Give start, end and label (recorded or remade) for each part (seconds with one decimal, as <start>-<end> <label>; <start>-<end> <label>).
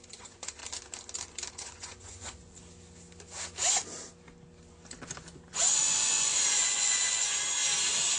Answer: 0.0-0.6 remade; 0.6-1.5 recorded; 1.5-2.6 remade; 2.6-5.5 recorded; 5.5-7.6 remade; 7.6-8.2 recorded